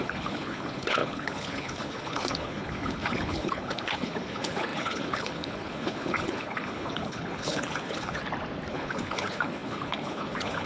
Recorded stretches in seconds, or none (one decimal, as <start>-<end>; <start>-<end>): 8.2-8.7